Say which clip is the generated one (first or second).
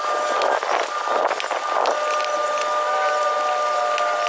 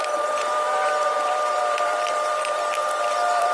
second